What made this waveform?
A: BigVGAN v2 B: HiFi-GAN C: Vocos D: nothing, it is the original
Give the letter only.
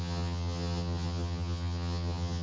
B